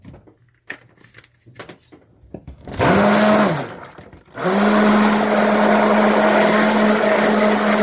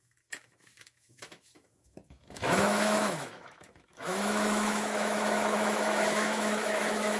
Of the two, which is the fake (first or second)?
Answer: second